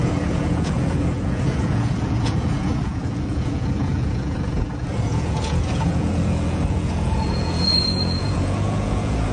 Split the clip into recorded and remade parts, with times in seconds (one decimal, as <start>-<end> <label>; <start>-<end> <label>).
0.0-9.3 remade